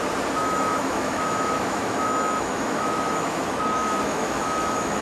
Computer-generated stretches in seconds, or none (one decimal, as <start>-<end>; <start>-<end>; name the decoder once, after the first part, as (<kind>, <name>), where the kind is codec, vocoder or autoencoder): 0.4-3.4 (autoencoder, DAC-VAE); 3.8-5.0